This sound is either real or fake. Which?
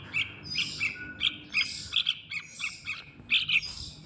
real